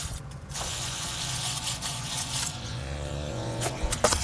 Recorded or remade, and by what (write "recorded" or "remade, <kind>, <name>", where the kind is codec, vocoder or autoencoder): remade, vocoder, Vocos